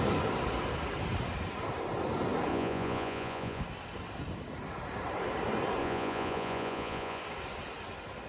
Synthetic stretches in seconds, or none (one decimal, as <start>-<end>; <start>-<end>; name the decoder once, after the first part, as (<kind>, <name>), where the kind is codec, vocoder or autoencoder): 2.5-3.6 (vocoder, Vocos); 5.8-7.2